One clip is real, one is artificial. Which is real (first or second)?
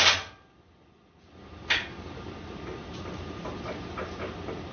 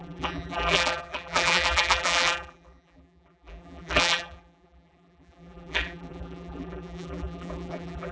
first